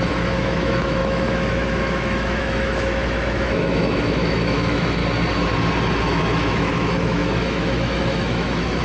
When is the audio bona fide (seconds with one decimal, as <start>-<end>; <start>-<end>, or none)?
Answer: 5.0-6.0